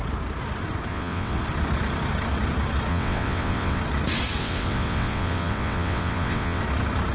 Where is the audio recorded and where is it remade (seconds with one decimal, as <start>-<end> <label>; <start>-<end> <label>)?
0.0-0.9 recorded; 0.9-1.4 remade; 1.4-2.9 recorded; 2.9-3.8 remade; 3.8-4.4 recorded; 4.4-6.6 remade; 6.6-7.1 recorded